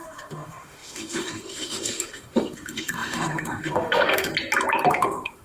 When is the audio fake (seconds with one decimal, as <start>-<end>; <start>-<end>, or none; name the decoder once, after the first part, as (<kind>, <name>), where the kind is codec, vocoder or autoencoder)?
0.0-4.3 (autoencoder, DAC-VAE); 4.9-5.4